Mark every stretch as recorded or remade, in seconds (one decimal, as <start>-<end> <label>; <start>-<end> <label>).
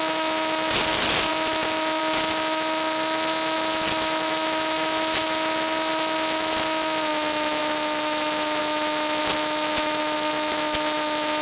0.0-11.4 recorded